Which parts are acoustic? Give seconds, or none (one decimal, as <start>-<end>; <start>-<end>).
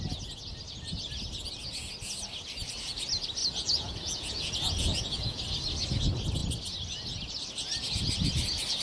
0.0-3.4; 5.4-8.8